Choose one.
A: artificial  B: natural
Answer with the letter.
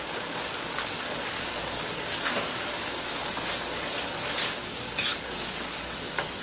A